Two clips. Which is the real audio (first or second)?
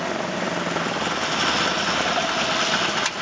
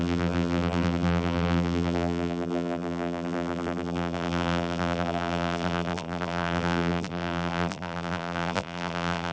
first